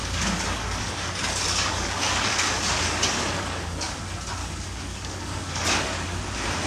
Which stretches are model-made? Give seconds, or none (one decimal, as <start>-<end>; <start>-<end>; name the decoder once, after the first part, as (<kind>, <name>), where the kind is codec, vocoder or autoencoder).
0.0-4.0 (codec, DAC); 4.4-6.2